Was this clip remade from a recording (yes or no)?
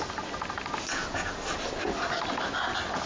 no